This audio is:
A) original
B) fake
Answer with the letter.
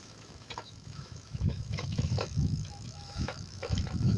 B